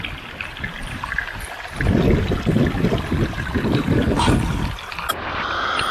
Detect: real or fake real